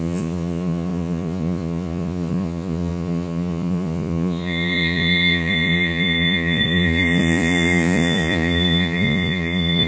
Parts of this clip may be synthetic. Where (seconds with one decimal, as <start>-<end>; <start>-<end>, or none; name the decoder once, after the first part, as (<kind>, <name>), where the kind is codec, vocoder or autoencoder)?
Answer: 0.0-9.9 (vocoder, Vocos)